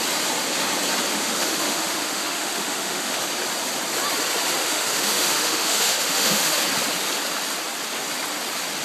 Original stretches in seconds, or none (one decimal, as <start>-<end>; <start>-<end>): 0.0-1.1; 3.2-4.6; 6.6-8.8

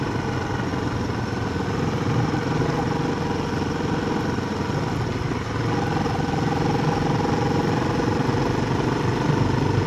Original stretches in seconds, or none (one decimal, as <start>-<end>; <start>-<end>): 0.0-9.9

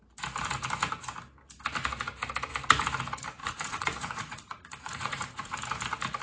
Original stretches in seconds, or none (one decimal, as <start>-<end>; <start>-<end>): 0.0-3.4; 5.6-6.2

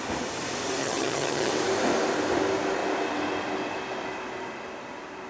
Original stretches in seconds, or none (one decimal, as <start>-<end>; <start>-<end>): 0.0-0.8; 1.5-5.3